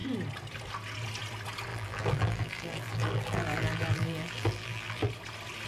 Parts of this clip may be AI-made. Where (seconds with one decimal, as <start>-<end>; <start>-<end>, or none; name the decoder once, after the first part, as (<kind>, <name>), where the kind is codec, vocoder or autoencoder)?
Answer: 1.7-5.1 (vocoder, BigVGAN v2)